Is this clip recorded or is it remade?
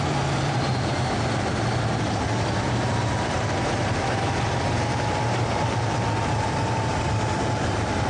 remade